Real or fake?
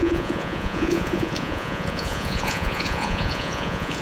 fake